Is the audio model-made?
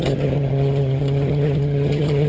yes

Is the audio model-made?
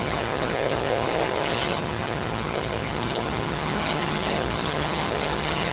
yes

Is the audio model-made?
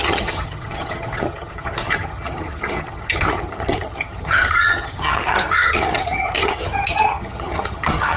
yes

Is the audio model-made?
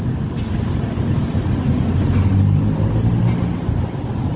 no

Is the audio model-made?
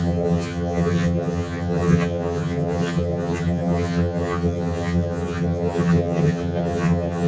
yes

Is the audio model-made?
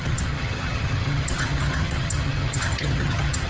yes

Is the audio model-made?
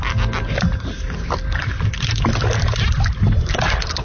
no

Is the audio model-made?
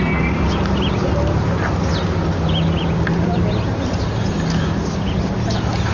no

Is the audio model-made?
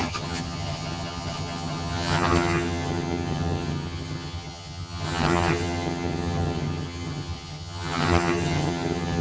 yes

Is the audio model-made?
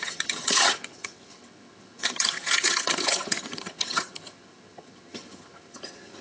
yes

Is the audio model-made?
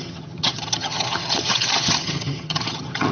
yes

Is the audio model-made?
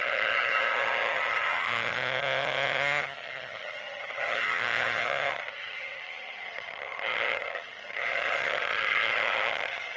yes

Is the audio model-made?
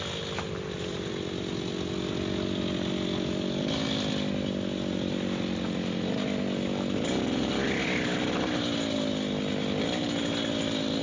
no